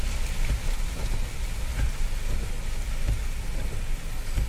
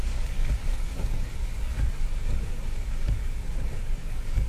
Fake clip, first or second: second